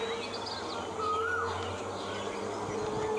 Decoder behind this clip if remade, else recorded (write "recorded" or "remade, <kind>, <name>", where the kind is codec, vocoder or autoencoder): recorded